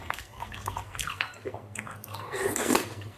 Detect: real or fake fake